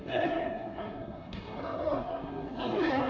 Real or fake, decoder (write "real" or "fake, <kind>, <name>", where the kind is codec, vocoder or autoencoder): fake, codec, SNAC